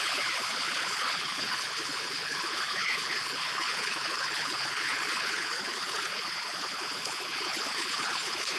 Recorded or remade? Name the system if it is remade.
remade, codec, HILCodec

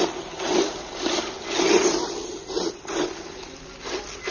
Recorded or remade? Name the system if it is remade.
recorded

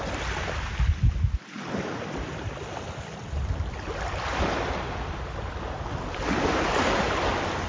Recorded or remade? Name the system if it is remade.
recorded